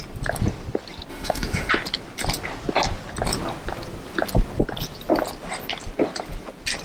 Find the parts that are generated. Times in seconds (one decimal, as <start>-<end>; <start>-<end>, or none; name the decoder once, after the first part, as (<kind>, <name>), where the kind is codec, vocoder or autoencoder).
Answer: 1.1-1.7 (autoencoder, DAC-VAE)